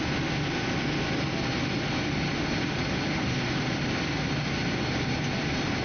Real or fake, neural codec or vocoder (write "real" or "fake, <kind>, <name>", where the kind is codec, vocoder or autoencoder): real